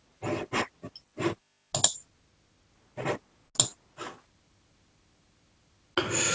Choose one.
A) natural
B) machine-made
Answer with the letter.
A